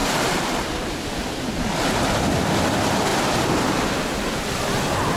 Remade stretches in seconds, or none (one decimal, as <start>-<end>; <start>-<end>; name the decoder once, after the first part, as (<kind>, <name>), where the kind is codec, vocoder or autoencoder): none